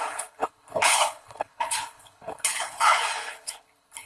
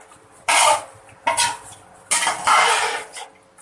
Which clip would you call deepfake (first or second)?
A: first